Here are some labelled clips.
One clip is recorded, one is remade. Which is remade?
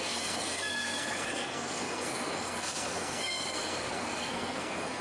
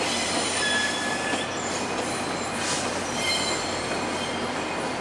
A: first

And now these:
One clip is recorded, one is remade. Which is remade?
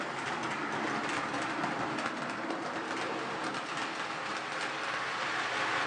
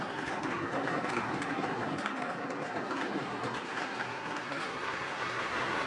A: second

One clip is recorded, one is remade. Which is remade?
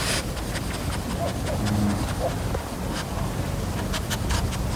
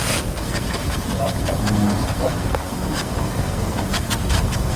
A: second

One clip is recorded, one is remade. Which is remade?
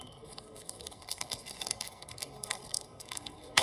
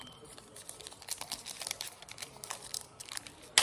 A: first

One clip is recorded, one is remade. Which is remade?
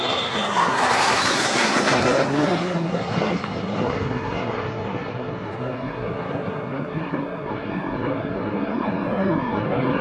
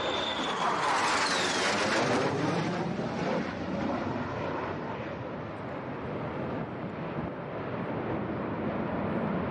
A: first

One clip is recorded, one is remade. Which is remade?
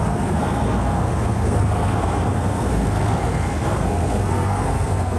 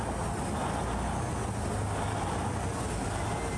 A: first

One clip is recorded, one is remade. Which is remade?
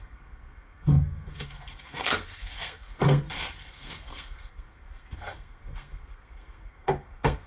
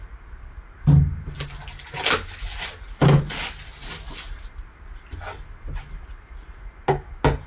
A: first